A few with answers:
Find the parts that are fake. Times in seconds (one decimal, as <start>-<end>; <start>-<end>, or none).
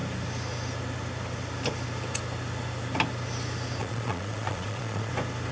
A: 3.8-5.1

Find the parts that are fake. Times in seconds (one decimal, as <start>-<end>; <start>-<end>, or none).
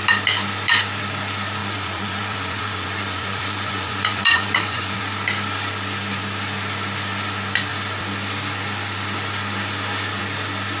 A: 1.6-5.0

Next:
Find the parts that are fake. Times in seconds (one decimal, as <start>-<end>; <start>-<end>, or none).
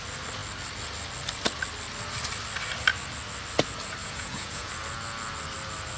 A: 4.0-4.7